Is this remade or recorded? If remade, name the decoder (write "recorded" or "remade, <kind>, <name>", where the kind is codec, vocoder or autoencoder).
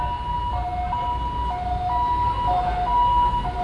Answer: recorded